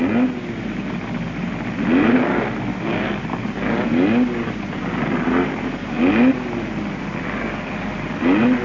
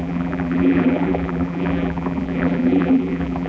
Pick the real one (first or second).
first